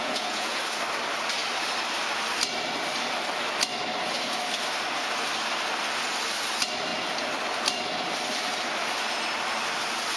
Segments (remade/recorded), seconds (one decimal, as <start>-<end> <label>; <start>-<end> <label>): 0.0-0.6 remade; 0.6-10.2 recorded